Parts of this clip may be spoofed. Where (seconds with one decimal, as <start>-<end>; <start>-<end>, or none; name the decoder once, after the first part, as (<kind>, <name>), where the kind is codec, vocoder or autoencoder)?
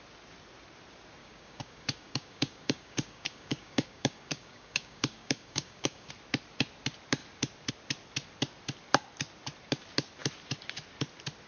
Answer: 1.2-6.1 (codec, DAC)